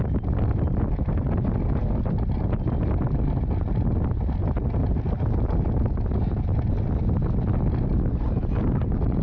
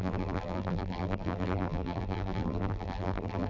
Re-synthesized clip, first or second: second